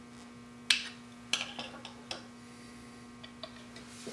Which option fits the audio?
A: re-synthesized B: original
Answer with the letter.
B